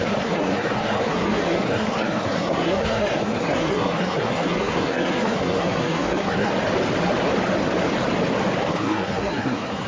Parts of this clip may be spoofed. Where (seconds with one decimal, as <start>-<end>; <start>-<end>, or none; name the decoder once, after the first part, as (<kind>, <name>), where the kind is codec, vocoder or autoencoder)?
0.0-6.5 (codec, SNAC); 8.7-9.9